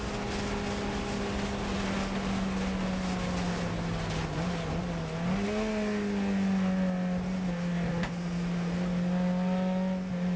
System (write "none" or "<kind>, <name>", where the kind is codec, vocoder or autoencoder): none